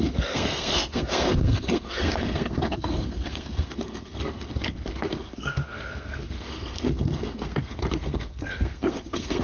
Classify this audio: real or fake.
fake